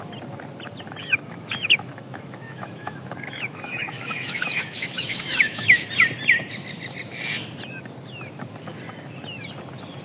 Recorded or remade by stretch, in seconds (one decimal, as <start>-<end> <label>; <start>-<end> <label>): 0.0-1.0 recorded; 1.0-5.9 remade; 5.9-10.0 recorded